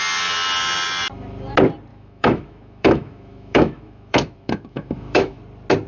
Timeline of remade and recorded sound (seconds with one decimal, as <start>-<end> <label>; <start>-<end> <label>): 0.0-1.9 recorded; 1.9-5.4 remade; 5.4-5.9 recorded